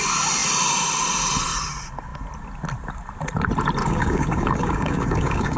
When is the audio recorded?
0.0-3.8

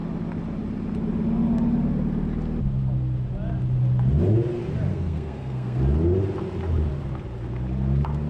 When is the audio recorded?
0.0-4.9; 5.8-8.3

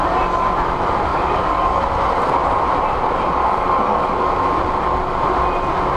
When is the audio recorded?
0.0-1.1; 1.8-3.4; 4.4-6.0

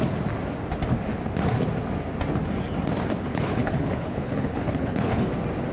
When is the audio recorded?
0.0-3.3; 5.3-5.7

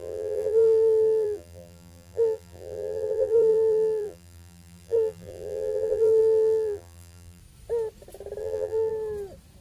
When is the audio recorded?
7.4-8.4; 8.9-9.6

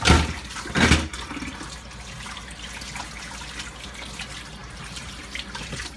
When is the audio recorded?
0.0-4.6; 5.2-6.0

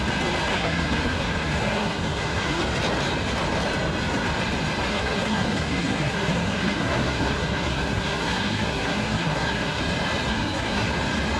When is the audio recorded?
0.0-0.5; 2.6-4.9; 9.8-10.3; 10.9-11.4